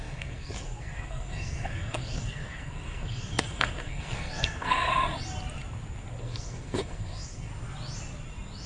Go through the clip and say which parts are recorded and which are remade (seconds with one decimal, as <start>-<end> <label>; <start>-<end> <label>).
0.0-4.9 remade; 4.9-6.2 recorded; 6.2-7.5 remade; 7.5-8.7 recorded